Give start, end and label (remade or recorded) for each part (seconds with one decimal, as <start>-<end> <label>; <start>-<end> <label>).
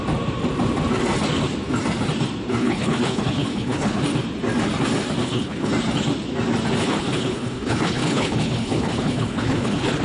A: 0.0-2.6 recorded; 2.6-4.0 remade; 4.0-5.2 recorded; 5.2-5.7 remade; 5.7-6.8 recorded; 6.8-10.0 remade